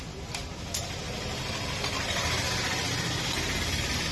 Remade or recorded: recorded